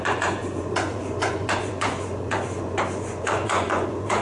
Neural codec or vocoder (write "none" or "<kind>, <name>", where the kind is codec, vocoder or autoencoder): vocoder, Vocos